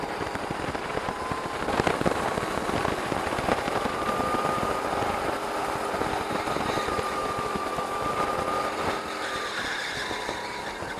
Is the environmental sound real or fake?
real